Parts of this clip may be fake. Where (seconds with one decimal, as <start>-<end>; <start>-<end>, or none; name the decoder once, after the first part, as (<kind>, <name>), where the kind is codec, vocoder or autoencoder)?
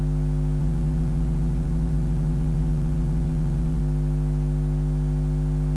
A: 0.6-3.8 (vocoder, Vocos)